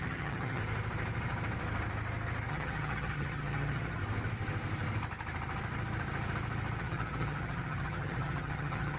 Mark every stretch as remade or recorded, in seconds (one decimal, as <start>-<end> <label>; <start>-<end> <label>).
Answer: 0.0-0.6 remade; 0.6-2.5 recorded; 2.5-4.0 remade; 4.0-6.8 recorded; 6.8-9.0 remade